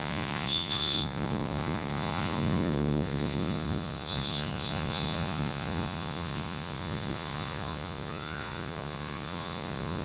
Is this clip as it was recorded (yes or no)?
no